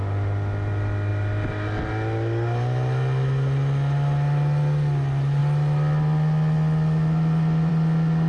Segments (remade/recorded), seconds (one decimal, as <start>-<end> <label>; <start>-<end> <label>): 0.0-8.3 recorded